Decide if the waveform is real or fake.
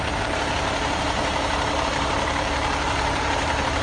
fake